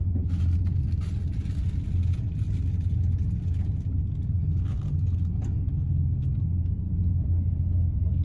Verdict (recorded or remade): recorded